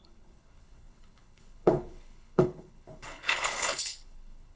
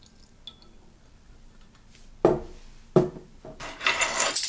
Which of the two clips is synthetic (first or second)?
first